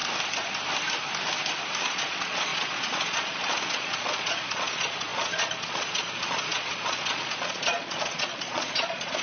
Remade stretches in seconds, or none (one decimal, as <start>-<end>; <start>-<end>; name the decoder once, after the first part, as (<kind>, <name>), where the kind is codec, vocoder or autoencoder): 1.8-9.2 (vocoder, Vocos)